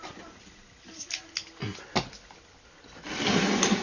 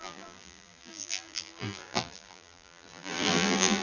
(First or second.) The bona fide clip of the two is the first